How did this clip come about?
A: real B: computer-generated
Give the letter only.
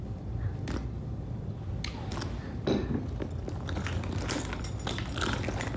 A